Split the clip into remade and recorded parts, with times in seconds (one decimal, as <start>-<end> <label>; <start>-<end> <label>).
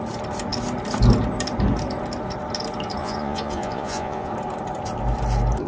0.0-3.0 recorded; 3.0-4.3 remade; 4.3-5.7 recorded